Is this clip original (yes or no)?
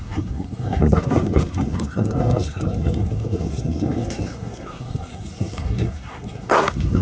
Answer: no